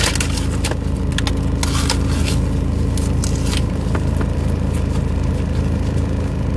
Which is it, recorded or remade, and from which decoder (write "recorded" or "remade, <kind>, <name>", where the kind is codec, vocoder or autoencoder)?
recorded